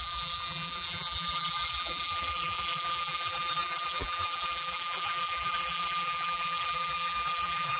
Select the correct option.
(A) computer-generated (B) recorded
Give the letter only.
A